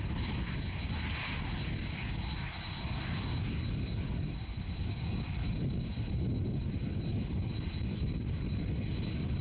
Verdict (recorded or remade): recorded